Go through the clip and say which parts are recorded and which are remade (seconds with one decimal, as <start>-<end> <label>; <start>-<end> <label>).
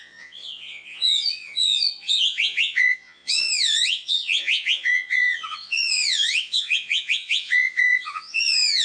0.0-8.8 remade